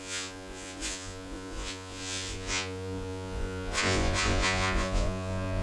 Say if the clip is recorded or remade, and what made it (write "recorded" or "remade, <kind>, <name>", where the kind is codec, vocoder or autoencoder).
remade, vocoder, Vocos